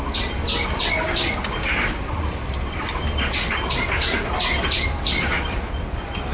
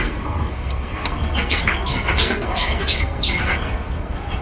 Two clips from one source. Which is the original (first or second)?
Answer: first